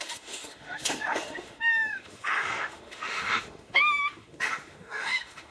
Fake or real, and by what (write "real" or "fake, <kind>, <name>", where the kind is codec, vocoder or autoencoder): fake, autoencoder, DAC-VAE